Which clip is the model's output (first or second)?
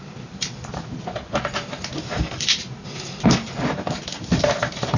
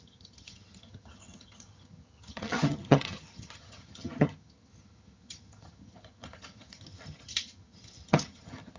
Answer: second